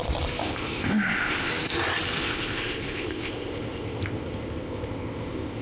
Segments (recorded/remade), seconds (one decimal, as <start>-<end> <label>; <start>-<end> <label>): 0.0-0.4 recorded; 0.4-1.5 remade; 1.5-2.2 recorded; 2.2-5.6 remade